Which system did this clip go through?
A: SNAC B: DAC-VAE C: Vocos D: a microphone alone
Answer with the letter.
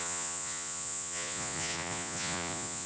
C